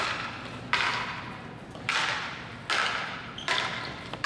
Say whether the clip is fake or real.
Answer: real